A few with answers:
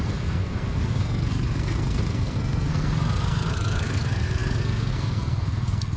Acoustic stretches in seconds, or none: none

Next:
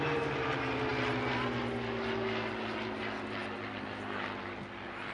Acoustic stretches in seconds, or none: 0.0-5.1

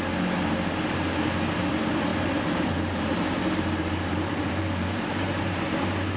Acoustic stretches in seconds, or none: 0.0-2.1; 5.8-6.2

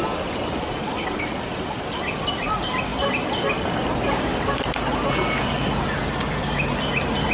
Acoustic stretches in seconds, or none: 0.0-7.3

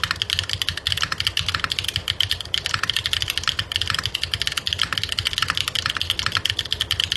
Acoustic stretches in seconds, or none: 0.0-7.2

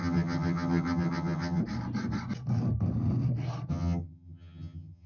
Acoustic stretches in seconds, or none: 1.6-3.7

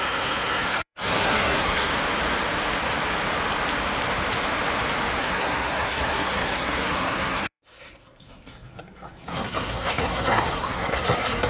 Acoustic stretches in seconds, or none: 1.9-5.2

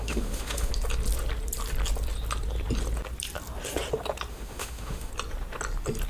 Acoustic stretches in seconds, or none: 0.7-4.3; 5.1-6.1